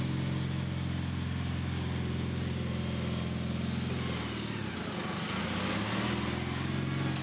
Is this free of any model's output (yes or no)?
yes